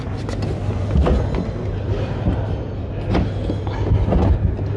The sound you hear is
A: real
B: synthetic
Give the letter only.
A